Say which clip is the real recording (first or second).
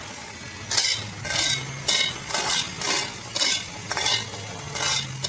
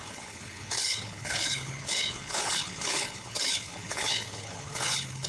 first